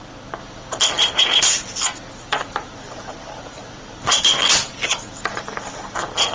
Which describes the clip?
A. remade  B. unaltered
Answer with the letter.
B